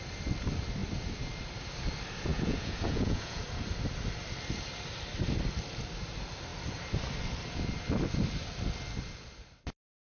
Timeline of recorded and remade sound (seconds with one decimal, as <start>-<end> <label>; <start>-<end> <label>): 0.0-2.3 recorded; 2.3-3.4 remade; 3.4-10.0 recorded